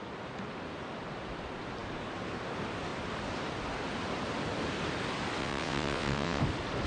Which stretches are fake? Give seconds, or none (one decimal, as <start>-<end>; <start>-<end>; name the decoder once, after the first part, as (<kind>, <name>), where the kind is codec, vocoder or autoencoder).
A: 5.4-6.4 (vocoder, WaveNeXt)